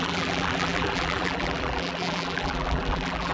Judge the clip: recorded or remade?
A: remade